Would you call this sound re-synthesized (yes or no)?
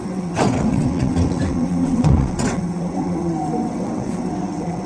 yes